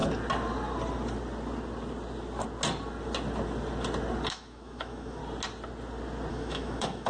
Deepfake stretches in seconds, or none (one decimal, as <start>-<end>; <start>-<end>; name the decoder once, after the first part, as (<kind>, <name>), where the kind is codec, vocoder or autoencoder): 4.3-5.2 (autoencoder, DAC-VAE); 6.3-7.1